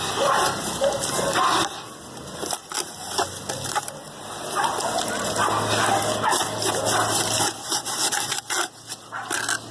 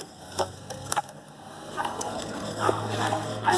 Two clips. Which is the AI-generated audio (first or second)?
second